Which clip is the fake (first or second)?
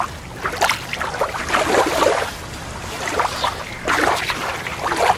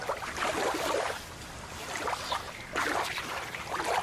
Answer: second